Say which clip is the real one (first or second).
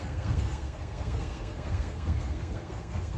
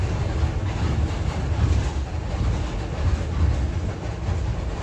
second